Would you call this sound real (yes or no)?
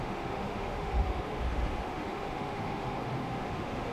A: no